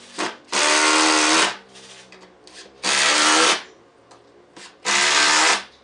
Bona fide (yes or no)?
yes